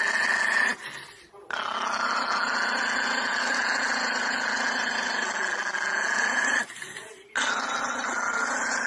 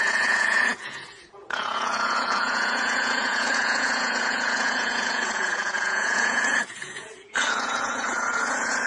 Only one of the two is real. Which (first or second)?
first